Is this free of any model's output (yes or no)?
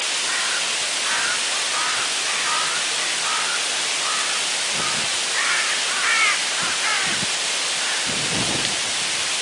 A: yes